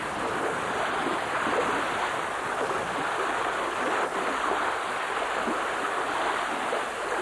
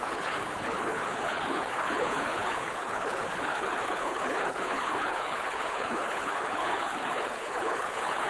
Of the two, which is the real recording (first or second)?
first